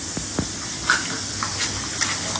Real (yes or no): yes